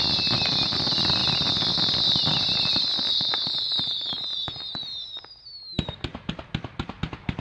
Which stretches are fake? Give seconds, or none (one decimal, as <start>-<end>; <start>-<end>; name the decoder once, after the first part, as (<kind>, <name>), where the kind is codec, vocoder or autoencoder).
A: 4.3-5.3 (vocoder, Vocos)